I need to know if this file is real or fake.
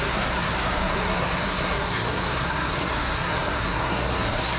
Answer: fake